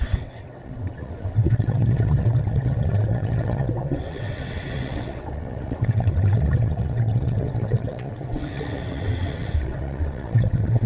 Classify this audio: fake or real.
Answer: fake